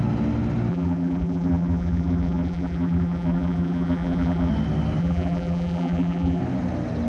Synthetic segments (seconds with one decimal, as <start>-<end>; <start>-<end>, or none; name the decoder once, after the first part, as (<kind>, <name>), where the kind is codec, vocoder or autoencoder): 0.7-4.5 (vocoder, BigVGAN v2); 5.0-6.4